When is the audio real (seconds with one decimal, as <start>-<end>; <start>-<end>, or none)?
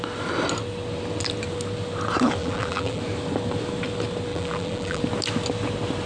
0.0-2.4; 3.0-4.3; 5.0-6.1